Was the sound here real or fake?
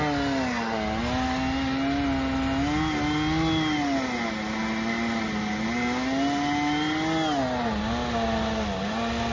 real